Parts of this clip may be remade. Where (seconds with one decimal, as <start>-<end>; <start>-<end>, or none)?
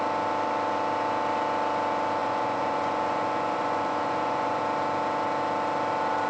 2.2-4.6